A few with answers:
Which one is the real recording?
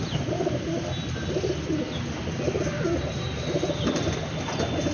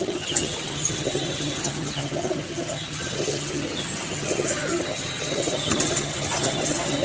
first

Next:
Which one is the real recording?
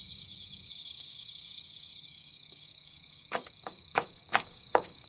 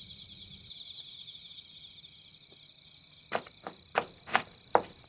second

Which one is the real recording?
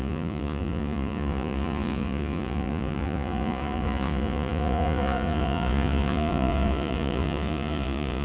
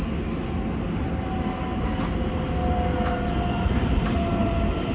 second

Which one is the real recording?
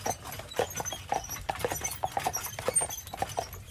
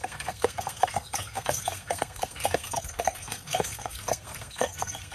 first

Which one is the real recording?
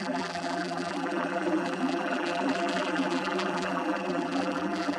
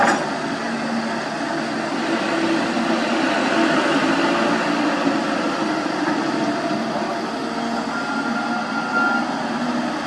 second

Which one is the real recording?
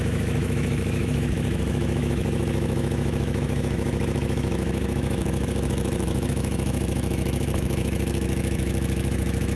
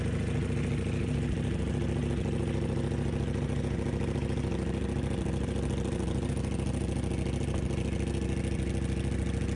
second